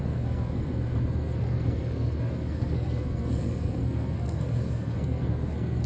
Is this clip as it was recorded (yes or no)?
no